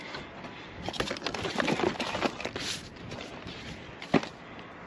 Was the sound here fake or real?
real